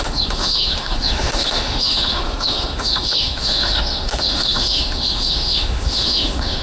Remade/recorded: remade